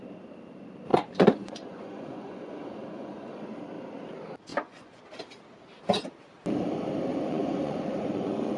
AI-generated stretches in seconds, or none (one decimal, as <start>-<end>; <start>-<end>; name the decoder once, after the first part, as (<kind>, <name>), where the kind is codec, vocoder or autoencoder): 0.9-3.3 (vocoder, Vocos); 4.5-5.0; 7.1-8.6